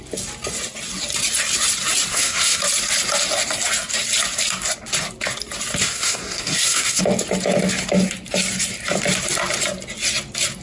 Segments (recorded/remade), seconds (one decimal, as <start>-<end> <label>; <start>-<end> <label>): 0.0-2.1 recorded; 2.1-2.6 remade; 2.6-5.8 recorded; 5.8-7.0 remade; 7.0-10.6 recorded